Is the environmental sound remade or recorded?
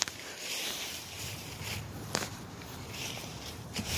remade